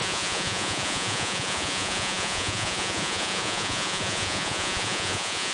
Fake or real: fake